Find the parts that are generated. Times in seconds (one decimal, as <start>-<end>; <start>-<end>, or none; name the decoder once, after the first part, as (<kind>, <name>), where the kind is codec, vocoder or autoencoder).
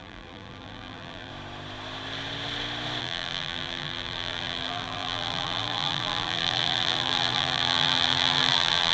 0.0-1.3 (vocoder, BigVGAN v2); 3.0-8.9